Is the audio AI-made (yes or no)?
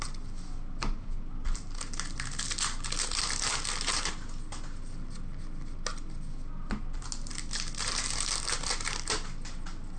no